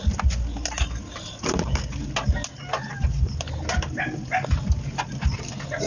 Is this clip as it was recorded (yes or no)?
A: yes